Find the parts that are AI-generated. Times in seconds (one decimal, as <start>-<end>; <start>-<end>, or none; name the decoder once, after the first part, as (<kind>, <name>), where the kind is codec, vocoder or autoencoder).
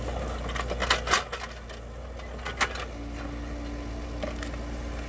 none